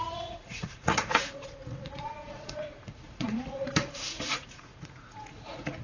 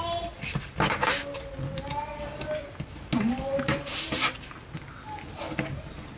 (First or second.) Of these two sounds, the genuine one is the second